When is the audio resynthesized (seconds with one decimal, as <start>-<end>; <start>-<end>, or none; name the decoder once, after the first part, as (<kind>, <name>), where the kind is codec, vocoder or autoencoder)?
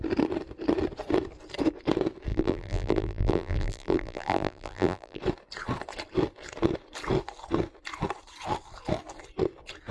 2.3-5.2 (vocoder, BigVGAN v2)